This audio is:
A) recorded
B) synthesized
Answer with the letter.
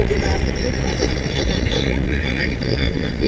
B